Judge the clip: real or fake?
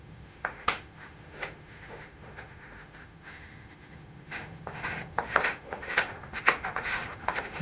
fake